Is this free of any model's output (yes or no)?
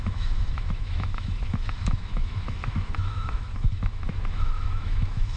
no